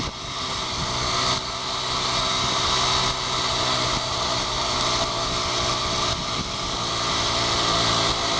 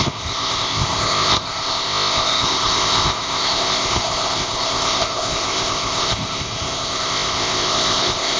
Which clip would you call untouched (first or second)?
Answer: first